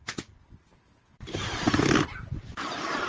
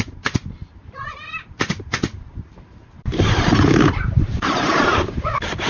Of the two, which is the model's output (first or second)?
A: second